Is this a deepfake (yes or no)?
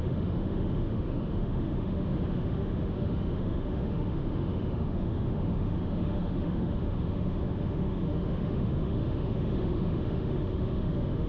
yes